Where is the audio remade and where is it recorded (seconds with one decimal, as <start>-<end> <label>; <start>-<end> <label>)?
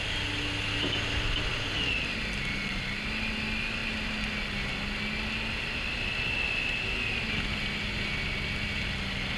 0.0-9.4 recorded